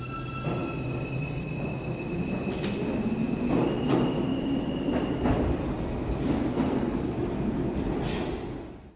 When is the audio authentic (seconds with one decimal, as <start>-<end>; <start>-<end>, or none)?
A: 0.0-6.5; 7.2-9.0